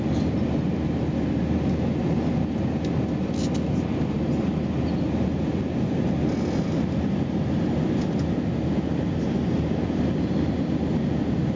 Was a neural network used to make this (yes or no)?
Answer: no